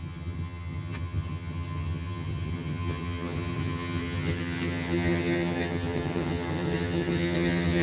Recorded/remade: remade